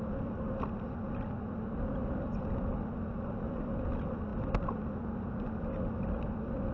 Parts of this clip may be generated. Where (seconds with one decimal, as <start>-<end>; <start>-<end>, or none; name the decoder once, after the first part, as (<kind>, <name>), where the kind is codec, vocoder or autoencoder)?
none